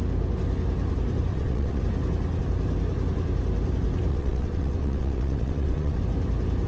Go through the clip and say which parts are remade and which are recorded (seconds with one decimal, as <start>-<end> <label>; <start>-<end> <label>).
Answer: 0.0-1.3 recorded; 1.3-1.8 remade; 1.8-4.1 recorded; 4.1-6.0 remade; 6.0-6.7 recorded